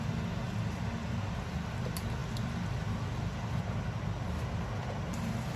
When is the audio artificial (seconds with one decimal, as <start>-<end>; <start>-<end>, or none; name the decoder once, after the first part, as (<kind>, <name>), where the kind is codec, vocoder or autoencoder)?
none